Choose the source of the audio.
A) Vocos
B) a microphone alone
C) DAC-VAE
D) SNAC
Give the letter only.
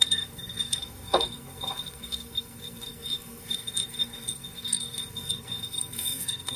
D